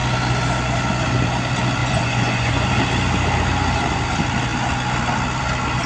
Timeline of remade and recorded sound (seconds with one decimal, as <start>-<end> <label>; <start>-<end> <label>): 0.0-1.8 recorded; 1.8-2.7 remade; 2.7-5.9 recorded